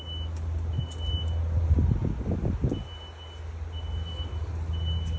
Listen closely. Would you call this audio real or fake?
real